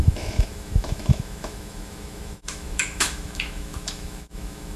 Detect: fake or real fake